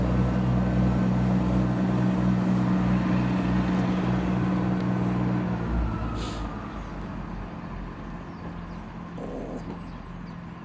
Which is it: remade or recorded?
recorded